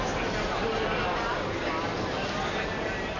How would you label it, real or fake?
real